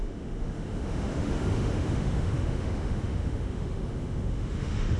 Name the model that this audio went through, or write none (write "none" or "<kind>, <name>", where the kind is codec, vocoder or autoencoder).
autoencoder, DAC-VAE